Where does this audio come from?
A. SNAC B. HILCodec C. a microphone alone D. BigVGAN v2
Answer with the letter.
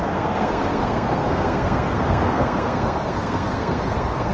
A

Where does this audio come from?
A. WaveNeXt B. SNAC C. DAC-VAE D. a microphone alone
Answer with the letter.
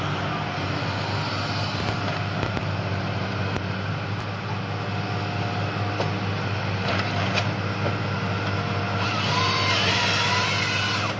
D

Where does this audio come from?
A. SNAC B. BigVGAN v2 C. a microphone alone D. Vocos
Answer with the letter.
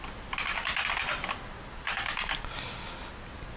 C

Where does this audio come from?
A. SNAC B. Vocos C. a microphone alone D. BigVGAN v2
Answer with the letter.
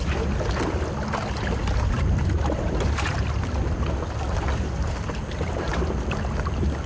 C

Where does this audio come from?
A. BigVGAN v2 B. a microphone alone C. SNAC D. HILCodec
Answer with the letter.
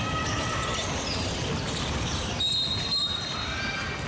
B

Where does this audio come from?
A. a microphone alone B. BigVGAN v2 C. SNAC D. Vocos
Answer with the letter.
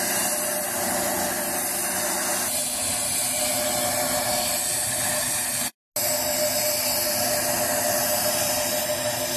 A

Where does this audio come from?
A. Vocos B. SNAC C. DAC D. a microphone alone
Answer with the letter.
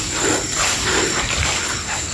D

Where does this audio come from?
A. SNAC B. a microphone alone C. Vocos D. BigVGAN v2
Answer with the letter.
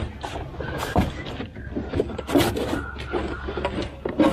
B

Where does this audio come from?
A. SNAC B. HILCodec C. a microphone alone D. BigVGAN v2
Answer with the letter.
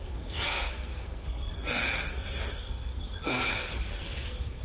A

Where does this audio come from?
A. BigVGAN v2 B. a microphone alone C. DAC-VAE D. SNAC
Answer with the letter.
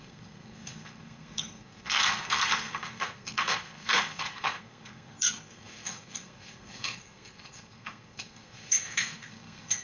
D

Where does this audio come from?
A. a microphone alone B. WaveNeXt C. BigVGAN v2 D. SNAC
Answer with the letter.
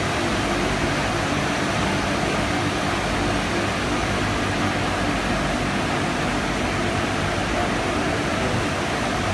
A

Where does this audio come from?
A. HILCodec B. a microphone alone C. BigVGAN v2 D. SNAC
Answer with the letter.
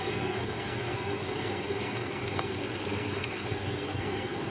D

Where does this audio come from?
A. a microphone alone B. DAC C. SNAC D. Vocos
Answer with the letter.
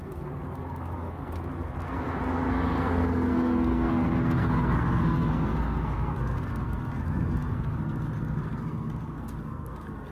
C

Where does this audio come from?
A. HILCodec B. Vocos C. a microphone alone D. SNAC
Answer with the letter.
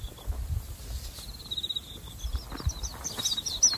C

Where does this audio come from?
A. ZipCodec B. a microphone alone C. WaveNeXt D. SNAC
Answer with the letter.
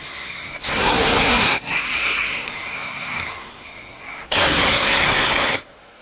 D